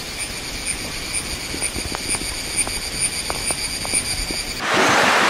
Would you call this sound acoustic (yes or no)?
yes